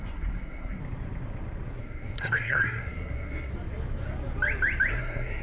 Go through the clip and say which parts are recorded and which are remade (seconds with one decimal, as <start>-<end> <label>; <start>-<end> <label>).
0.0-0.8 remade; 0.8-1.8 recorded; 1.8-3.5 remade; 3.5-4.9 recorded; 4.9-5.4 remade